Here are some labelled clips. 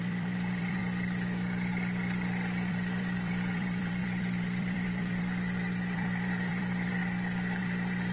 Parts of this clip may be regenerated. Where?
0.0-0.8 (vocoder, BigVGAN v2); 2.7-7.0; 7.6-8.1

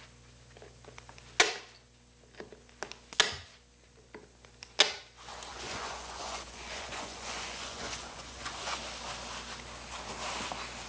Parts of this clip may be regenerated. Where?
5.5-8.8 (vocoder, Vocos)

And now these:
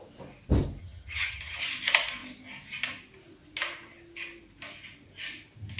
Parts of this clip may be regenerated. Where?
0.8-1.6 (vocoder, HiFi-GAN)

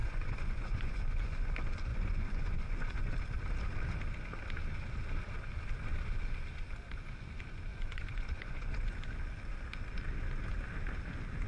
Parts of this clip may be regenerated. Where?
0.0-1.5 (vocoder, Vocos); 1.9-3.1; 7.7-9.1

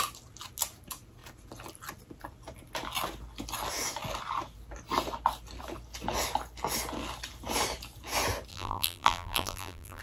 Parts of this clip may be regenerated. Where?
8.5-10.0 (vocoder, BigVGAN v2)

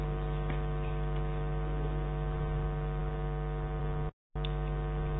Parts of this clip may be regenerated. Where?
none

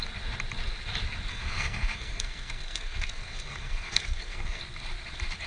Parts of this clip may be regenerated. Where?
1.3-4.6 (codec, SNAC)